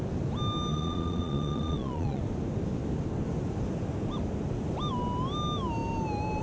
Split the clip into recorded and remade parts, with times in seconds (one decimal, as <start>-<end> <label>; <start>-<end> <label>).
0.0-0.7 recorded; 0.7-2.2 remade; 2.2-6.4 recorded